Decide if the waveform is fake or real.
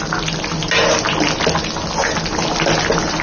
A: real